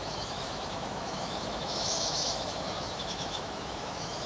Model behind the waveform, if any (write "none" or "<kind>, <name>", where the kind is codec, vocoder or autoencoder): autoencoder, DAC-VAE